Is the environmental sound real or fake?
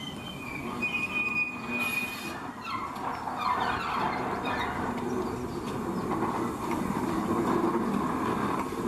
real